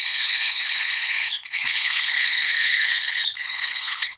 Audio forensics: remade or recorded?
remade